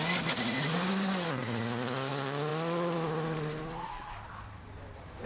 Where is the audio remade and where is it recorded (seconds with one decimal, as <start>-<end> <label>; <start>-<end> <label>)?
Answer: 0.0-5.3 recorded